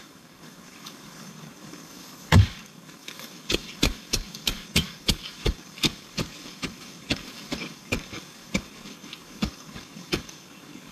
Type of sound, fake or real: fake